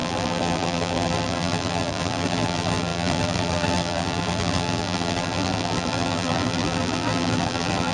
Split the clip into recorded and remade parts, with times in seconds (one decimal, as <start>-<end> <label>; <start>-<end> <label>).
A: 0.0-7.9 remade